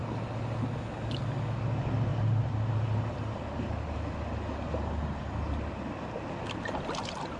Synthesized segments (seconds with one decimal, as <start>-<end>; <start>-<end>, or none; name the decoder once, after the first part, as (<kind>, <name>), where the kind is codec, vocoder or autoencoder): none